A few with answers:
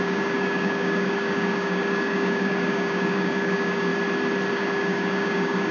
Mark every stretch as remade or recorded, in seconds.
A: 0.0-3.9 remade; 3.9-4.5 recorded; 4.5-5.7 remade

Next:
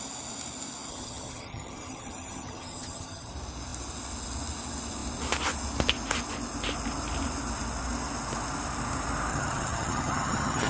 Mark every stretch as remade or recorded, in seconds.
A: 0.0-0.9 recorded; 0.9-3.3 remade; 3.3-9.3 recorded; 9.3-10.7 remade